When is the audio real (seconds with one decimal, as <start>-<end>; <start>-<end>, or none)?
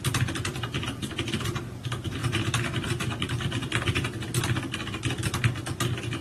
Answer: 0.0-6.2